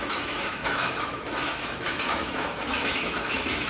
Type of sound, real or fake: fake